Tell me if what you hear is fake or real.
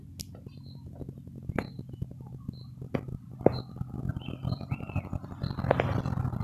real